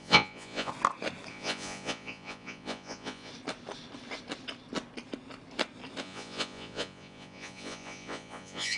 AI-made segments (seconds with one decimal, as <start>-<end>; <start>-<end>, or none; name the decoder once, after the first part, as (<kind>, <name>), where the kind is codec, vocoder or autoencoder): 0.0-0.7 (vocoder, Vocos); 1.3-3.3; 6.0-8.8